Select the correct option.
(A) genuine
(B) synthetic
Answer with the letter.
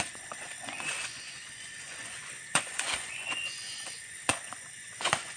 B